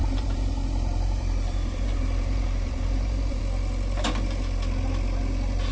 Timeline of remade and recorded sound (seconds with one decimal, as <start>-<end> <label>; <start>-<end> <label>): 0.0-3.4 remade; 3.4-5.7 recorded